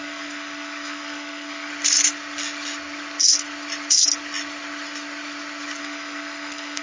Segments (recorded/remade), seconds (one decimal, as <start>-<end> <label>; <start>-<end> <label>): 0.0-1.7 remade; 1.7-5.8 recorded; 5.8-6.8 remade